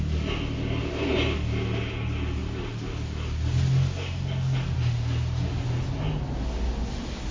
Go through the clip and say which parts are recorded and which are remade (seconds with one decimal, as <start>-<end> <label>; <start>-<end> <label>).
0.0-7.3 recorded